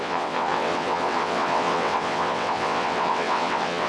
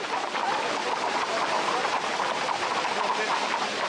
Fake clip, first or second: first